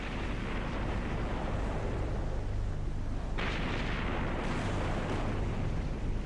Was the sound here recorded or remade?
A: remade